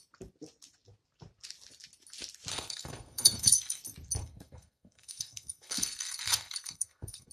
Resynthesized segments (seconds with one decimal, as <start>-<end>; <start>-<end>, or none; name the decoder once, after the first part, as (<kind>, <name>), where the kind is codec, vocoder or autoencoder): 2.5-3.8 (codec, SNAC); 4.2-7.3

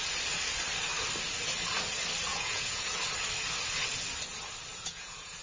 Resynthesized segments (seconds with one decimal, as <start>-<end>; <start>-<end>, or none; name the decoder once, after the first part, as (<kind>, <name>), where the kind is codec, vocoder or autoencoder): 2.3-3.0 (vocoder, Vocos); 4.7-5.4

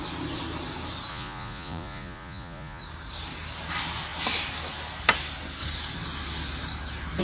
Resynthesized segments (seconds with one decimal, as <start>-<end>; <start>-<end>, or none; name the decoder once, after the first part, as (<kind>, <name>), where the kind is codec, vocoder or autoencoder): 1.1-2.8 (vocoder, Vocos)

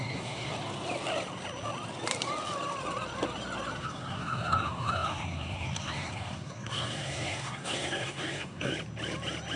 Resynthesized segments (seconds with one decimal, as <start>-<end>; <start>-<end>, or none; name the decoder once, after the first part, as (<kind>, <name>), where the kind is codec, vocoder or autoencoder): 0.0-0.5 (codec, SNAC); 3.8-8.7

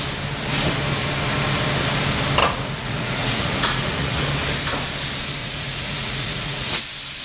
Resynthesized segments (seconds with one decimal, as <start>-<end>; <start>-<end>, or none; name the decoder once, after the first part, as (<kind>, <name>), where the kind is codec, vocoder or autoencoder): 2.4-4.2 (vocoder, Vocos); 5.4-6.8